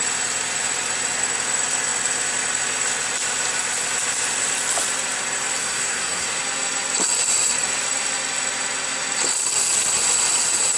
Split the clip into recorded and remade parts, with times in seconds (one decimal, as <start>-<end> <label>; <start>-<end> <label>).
0.0-5.6 recorded; 5.6-6.4 remade; 6.4-10.8 recorded